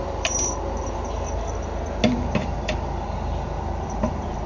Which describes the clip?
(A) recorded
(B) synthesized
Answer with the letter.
A